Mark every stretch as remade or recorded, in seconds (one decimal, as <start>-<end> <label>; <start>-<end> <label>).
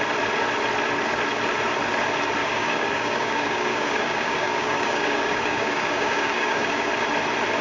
0.0-2.4 recorded; 2.4-6.9 remade; 6.9-7.6 recorded